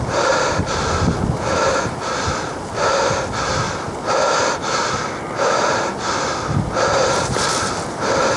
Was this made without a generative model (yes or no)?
yes